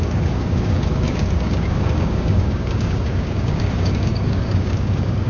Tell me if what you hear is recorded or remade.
remade